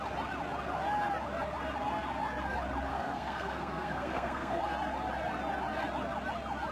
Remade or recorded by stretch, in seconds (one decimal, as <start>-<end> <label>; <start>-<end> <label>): 0.0-2.9 recorded; 2.9-4.6 remade; 4.6-6.7 recorded